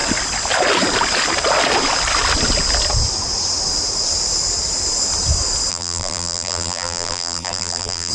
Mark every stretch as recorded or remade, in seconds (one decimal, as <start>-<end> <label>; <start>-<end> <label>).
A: 0.0-5.7 recorded; 5.7-8.1 remade